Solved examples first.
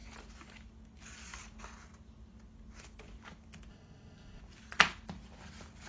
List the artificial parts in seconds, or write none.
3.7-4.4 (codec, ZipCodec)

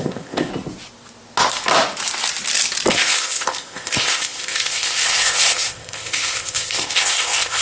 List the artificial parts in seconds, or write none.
0.0-0.5 (codec, ZipCodec); 2.9-7.6